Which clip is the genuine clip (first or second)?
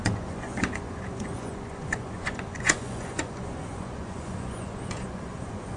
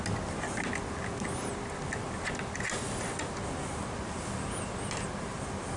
second